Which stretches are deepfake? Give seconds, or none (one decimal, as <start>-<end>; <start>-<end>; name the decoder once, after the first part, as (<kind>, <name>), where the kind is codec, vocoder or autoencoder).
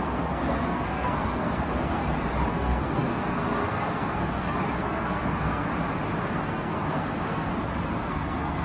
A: 0.0-2.0 (codec, SNAC); 2.5-5.7; 6.2-7.5; 8.0-8.6